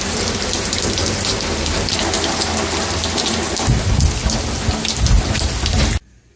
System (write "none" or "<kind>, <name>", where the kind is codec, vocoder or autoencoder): none